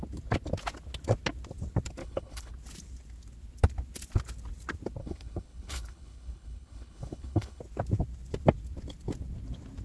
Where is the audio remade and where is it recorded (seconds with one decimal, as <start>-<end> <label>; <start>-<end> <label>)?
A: 0.0-2.0 recorded; 2.0-2.5 remade; 2.5-5.0 recorded; 5.0-7.6 remade; 7.6-9.8 recorded